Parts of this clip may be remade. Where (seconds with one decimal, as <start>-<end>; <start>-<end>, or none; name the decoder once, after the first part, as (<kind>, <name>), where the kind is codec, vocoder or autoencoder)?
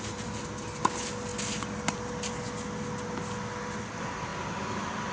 none